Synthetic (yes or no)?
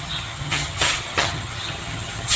yes